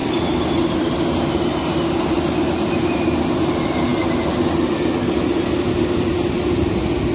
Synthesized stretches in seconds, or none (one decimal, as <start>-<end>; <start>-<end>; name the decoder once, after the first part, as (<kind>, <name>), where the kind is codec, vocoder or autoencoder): none